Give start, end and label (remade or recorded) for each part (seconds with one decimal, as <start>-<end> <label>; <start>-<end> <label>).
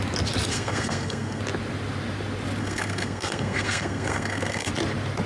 0.0-0.5 recorded; 0.5-1.4 remade; 1.4-2.6 recorded; 2.6-4.7 remade; 4.7-5.3 recorded